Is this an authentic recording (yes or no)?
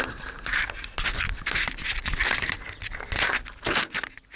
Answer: yes